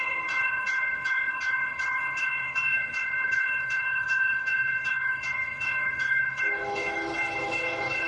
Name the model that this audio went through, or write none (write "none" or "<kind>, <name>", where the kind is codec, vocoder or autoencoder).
codec, HILCodec